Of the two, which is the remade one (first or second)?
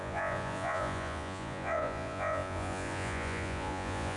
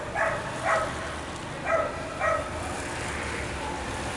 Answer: first